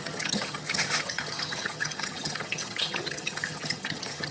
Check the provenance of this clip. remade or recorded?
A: remade